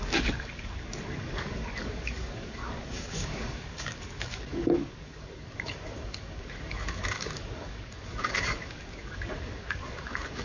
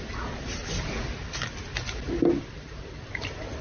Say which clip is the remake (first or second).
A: first